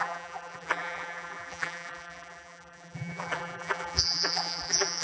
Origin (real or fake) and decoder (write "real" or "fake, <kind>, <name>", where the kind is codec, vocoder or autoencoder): fake, vocoder, BigVGAN v2